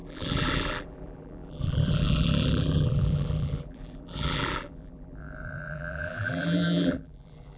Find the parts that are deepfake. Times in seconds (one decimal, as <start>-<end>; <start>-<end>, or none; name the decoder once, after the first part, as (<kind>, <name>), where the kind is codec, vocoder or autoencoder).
0.0-7.6 (vocoder, BigVGAN v2)